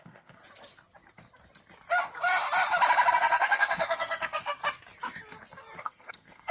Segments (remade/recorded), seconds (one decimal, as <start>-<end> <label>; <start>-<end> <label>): 0.0-0.4 remade; 0.4-3.1 recorded; 3.1-4.6 remade; 4.6-5.8 recorded; 5.8-6.5 remade